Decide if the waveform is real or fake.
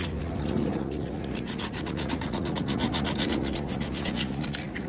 fake